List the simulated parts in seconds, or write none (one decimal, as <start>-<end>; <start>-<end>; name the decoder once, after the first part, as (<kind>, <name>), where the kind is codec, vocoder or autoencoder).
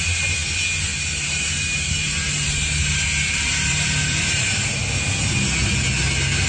0.0-0.4 (vocoder, BigVGAN v2); 1.0-4.8